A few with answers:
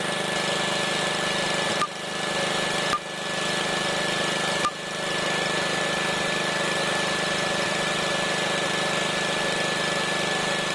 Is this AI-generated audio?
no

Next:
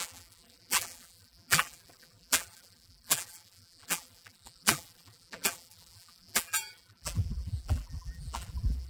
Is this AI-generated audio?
yes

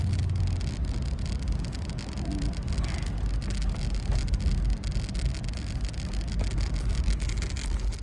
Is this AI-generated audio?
no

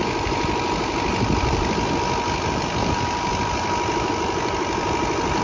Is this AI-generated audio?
yes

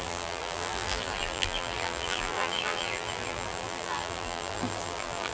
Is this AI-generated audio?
yes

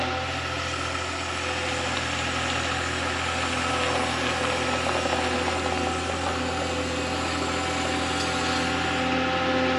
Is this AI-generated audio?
no